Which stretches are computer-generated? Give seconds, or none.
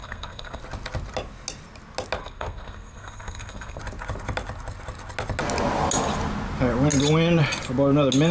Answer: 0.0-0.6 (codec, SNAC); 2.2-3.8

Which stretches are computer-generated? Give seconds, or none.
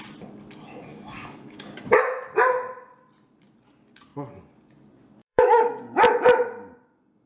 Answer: 0.9-1.8 (autoencoder, DAC-VAE); 5.2-5.8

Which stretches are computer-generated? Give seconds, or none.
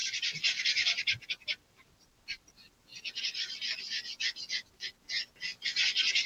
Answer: 0.0-2.5 (vocoder, BigVGAN v2); 2.9-4.0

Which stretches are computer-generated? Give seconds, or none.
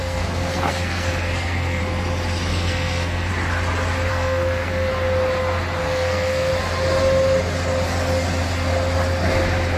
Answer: 0.0-1.8 (codec, SNAC); 2.5-3.3; 4.1-4.9; 5.8-6.5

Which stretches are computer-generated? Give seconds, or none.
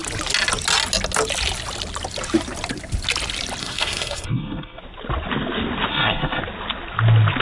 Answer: 3.6-4.8 (codec, SNAC); 5.9-6.4